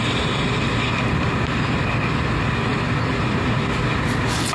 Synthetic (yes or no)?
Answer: no